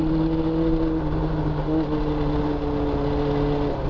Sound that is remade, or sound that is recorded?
recorded